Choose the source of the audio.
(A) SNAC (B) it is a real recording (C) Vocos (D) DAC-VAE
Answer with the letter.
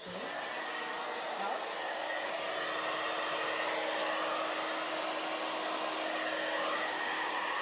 B